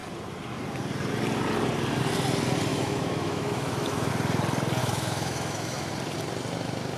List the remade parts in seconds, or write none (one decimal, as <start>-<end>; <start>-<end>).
2.7-4.1; 4.8-5.9